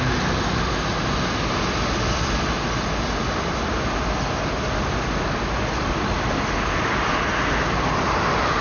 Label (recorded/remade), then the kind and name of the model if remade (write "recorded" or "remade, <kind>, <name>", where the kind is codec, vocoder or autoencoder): recorded